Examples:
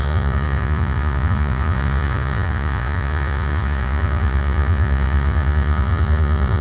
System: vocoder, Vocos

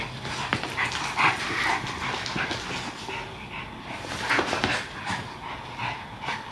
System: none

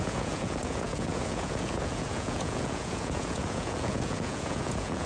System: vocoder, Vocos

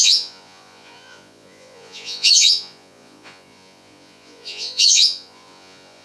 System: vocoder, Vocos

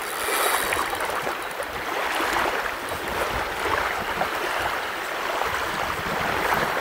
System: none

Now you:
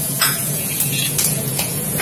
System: vocoder, Vocos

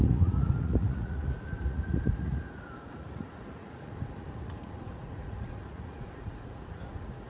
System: vocoder, Vocos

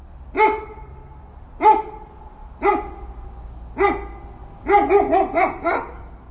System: none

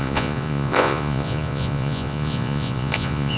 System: vocoder, Vocos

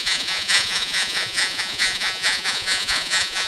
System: vocoder, Vocos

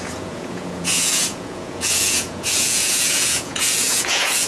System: vocoder, Vocos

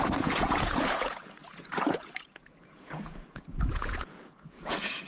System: vocoder, Vocos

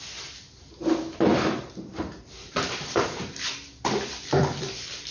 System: none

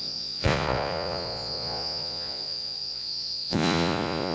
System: vocoder, Vocos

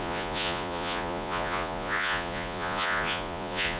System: vocoder, Vocos